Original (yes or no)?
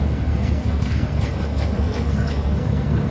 no